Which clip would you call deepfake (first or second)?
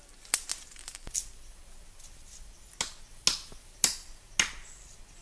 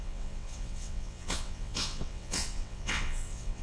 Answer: second